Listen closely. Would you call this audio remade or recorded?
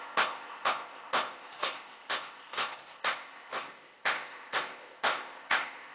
remade